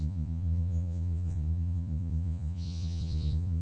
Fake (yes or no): yes